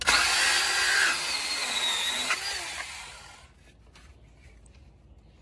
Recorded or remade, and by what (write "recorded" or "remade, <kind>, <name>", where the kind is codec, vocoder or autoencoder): recorded